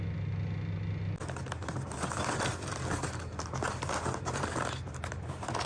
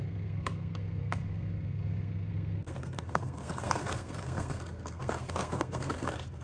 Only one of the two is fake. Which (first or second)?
second